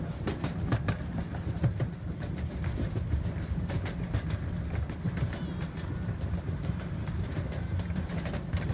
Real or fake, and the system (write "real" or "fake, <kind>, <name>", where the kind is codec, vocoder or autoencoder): real